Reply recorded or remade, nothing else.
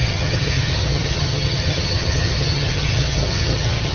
remade